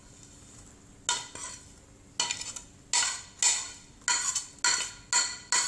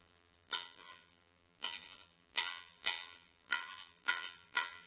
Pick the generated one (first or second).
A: second